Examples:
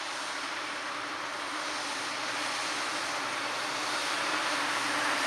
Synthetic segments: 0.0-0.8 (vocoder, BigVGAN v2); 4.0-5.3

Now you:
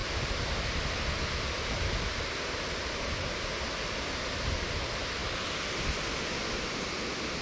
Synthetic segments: none

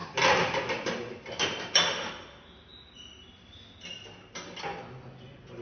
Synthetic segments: 0.0-2.1 (vocoder, BigVGAN v2)

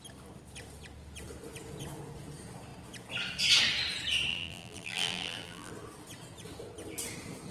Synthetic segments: 4.3-5.7 (vocoder, BigVGAN v2)

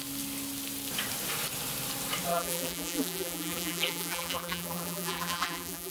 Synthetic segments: 2.3-5.9 (vocoder, BigVGAN v2)

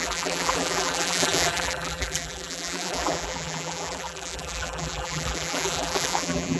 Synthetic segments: 0.0-6.6 (vocoder, BigVGAN v2)